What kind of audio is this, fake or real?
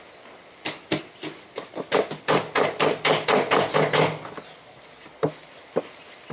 real